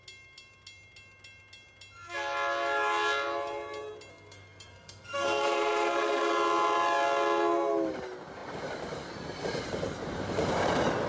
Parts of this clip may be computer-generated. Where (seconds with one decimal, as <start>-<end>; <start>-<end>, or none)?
4.1-6.3